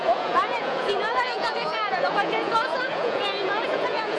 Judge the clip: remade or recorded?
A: remade